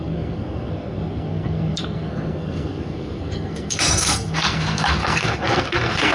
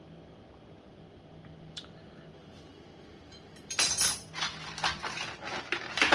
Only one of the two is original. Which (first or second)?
second